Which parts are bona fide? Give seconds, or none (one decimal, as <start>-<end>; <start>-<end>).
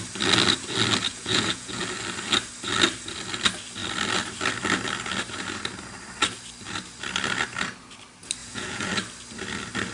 0.0-1.1; 1.8-8.4; 8.9-9.9